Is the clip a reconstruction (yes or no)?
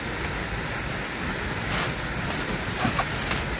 no